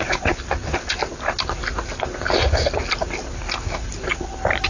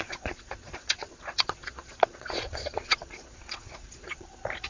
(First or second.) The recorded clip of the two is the first